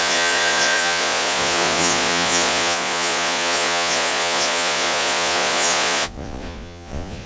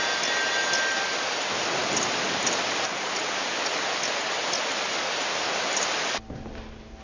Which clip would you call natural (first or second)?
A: second